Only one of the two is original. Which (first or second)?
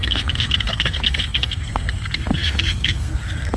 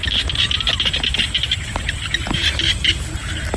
second